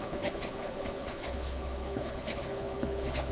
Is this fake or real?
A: fake